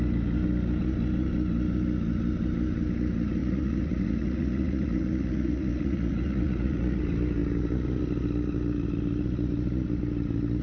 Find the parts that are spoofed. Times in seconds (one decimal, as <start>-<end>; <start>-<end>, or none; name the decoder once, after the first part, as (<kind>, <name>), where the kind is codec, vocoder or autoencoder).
3.4-7.0 (vocoder, Vocos)

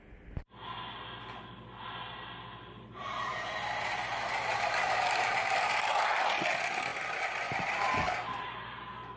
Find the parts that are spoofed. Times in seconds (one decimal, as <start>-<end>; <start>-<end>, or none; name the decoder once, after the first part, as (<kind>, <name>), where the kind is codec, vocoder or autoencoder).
3.0-6.4 (vocoder, BigVGAN v2)

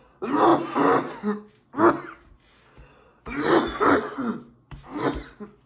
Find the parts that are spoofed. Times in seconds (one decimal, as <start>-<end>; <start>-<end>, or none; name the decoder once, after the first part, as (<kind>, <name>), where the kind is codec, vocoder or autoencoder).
none

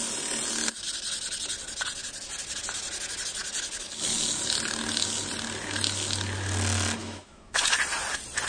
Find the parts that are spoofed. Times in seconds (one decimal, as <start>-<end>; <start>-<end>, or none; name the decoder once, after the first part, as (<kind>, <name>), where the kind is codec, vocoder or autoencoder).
7.0-7.6 (autoencoder, DAC-VAE)

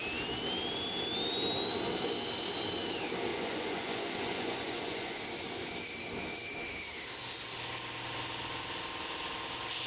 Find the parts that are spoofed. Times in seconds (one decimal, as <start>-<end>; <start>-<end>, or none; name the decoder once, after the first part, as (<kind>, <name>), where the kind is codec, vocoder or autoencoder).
3.3-5.2 (vocoder, Vocos)

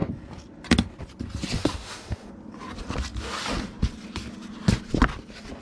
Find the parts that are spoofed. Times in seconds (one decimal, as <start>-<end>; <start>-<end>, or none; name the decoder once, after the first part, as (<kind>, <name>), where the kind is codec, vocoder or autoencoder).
1.6-2.3 (autoencoder, DAC-VAE)

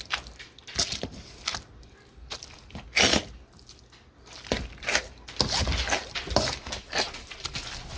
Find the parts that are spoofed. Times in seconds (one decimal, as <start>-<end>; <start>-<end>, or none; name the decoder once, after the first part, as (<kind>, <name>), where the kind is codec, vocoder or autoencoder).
none